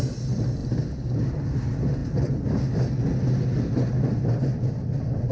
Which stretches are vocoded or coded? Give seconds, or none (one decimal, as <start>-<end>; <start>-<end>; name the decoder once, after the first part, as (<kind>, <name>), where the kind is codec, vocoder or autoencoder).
none